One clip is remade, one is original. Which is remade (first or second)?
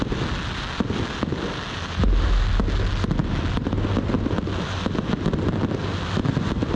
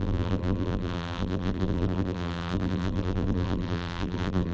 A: second